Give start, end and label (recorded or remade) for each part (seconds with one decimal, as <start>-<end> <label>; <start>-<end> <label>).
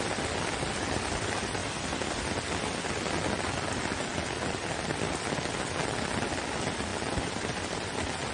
0.0-8.3 recorded